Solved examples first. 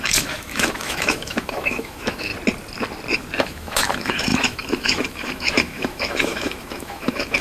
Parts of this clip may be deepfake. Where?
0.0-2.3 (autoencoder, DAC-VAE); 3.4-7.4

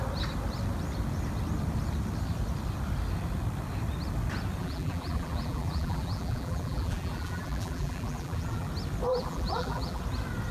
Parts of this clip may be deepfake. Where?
4.6-8.7 (vocoder, BigVGAN v2); 9.1-10.0